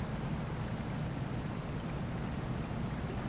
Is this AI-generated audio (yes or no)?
no